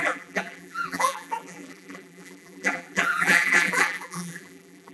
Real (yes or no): no